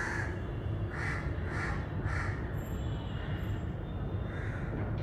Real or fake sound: real